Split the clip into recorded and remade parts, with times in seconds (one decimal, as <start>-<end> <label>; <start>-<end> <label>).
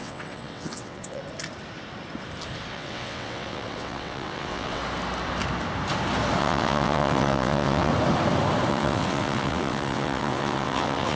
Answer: 0.0-1.2 remade; 1.2-2.7 recorded; 2.7-4.8 remade; 4.8-6.4 recorded; 6.4-7.9 remade; 7.9-8.7 recorded; 8.7-11.2 remade